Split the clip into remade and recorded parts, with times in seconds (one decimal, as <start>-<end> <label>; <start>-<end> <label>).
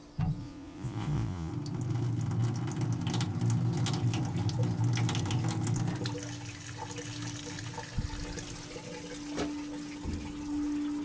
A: 0.0-0.4 recorded; 0.4-1.5 remade; 1.5-11.0 recorded